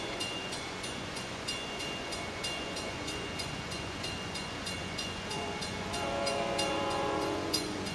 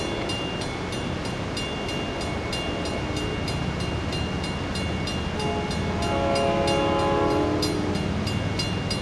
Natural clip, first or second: second